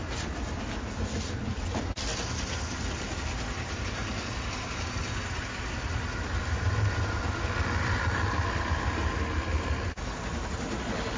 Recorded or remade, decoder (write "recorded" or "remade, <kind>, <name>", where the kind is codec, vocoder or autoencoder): recorded